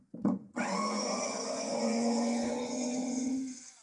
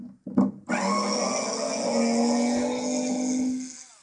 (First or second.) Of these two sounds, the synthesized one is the first